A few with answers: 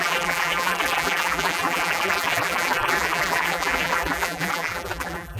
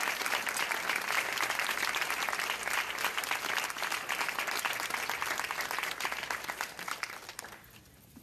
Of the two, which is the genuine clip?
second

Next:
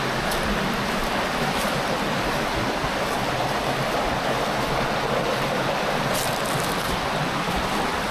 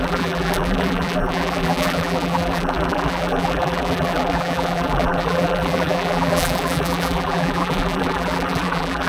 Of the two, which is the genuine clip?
first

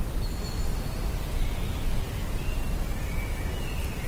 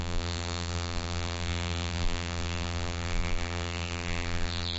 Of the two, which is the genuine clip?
first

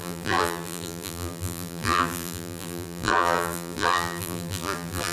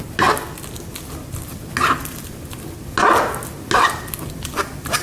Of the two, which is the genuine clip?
second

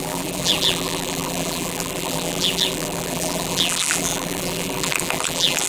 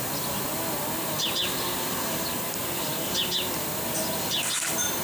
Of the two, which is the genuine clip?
second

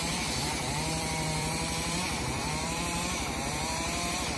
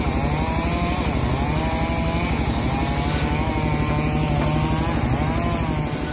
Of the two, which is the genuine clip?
second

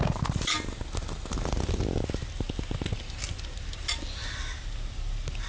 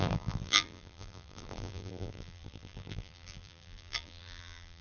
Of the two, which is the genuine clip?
first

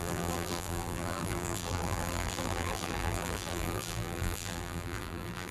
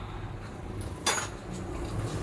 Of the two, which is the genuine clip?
second